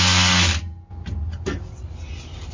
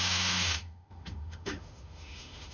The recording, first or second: first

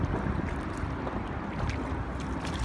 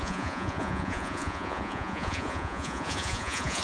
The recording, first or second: first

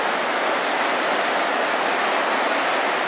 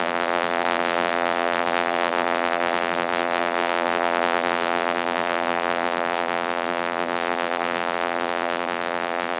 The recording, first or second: first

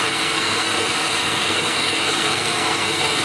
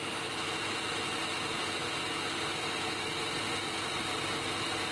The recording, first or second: second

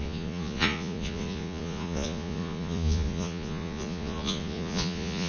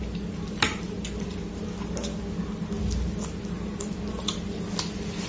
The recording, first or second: second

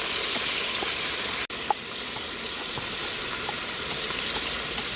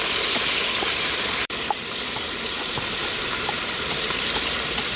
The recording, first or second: first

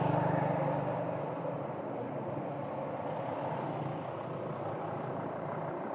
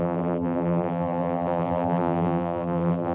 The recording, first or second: first